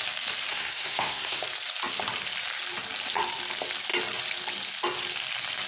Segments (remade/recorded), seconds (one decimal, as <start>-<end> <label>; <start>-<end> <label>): 0.0-0.5 recorded; 0.5-1.4 remade; 1.4-5.7 recorded